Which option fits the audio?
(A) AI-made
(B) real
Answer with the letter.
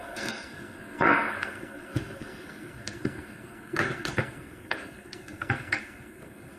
A